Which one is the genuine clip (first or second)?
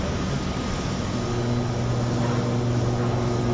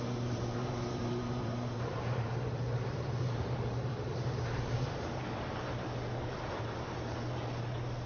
first